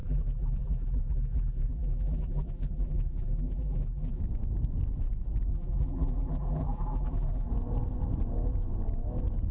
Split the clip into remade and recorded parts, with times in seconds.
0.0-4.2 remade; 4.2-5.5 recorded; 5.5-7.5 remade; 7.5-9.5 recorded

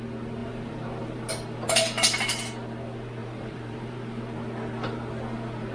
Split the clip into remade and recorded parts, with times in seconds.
0.0-0.4 recorded; 0.4-1.3 remade; 1.3-3.2 recorded; 3.2-4.2 remade; 4.2-5.7 recorded

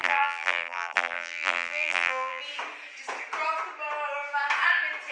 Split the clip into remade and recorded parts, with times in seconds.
0.0-2.4 remade; 2.4-5.1 recorded

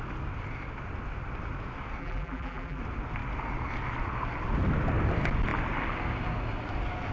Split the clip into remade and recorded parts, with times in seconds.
0.0-2.0 recorded; 2.0-2.8 remade; 2.8-7.1 recorded